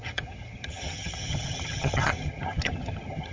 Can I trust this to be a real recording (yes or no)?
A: no